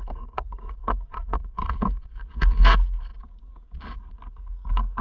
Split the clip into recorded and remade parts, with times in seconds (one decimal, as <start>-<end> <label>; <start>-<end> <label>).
0.0-3.1 remade; 3.1-4.3 recorded; 4.3-5.0 remade